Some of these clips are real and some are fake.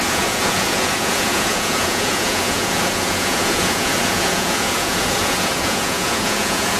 fake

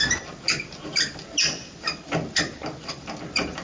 real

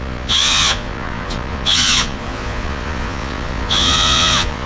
fake